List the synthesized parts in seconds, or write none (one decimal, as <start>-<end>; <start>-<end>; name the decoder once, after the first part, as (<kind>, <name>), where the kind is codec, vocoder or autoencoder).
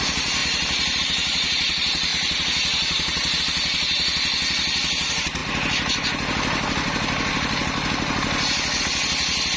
0.4-1.0 (vocoder, BigVGAN v2); 2.1-3.4